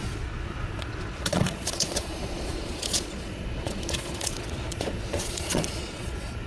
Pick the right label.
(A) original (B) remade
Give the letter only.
B